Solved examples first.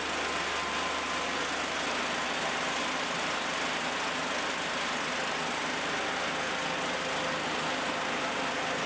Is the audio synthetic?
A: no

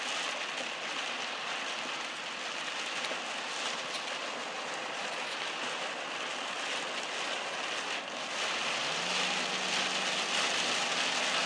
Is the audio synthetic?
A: no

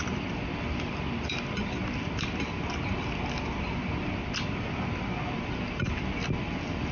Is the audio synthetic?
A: yes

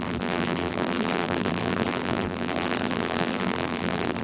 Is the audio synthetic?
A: yes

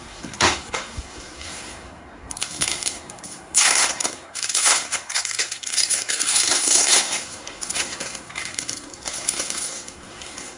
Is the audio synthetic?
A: yes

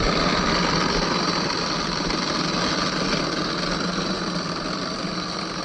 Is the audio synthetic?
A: no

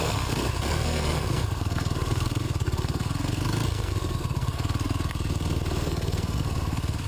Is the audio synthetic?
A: yes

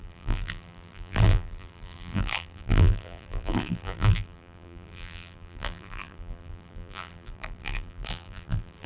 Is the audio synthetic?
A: yes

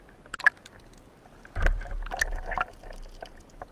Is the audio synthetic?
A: no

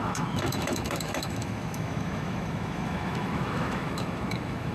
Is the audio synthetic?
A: yes